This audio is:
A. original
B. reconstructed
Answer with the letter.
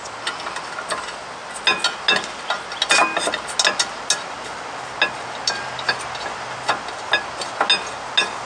A